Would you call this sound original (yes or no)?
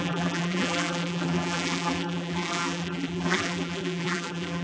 no